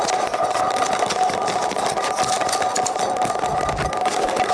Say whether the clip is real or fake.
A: real